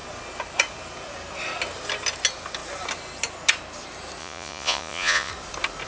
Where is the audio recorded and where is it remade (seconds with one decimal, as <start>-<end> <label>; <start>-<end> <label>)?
0.0-4.2 recorded; 4.2-5.3 remade; 5.3-5.9 recorded